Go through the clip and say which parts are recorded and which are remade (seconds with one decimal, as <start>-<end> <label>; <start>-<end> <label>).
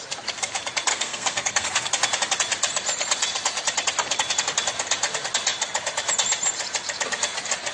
0.0-0.9 recorded; 0.9-1.9 remade; 1.9-7.7 recorded